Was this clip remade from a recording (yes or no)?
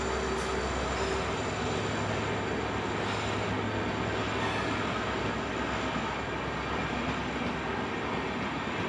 no